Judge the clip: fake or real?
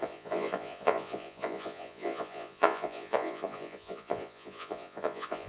fake